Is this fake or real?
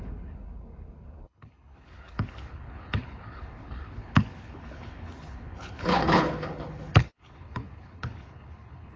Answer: fake